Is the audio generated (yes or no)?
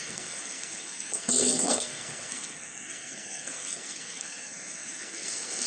yes